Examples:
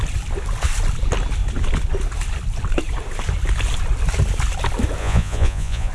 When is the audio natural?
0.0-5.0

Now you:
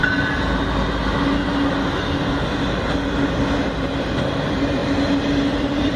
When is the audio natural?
0.0-3.6; 4.8-5.5

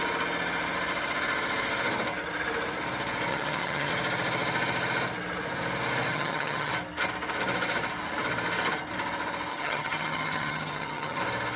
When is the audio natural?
0.0-3.3; 3.9-6.1; 6.7-9.5; 11.2-11.6

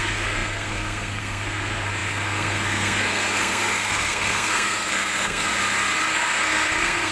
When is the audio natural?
5.5-6.1

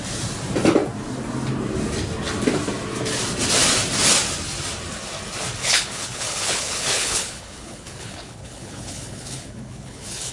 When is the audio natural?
0.0-5.6

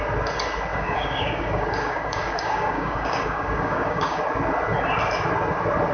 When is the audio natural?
0.0-0.7; 4.2-5.9